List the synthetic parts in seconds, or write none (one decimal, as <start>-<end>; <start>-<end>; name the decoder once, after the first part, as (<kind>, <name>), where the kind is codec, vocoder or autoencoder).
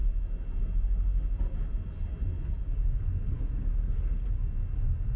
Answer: 3.3-4.3 (codec, SNAC)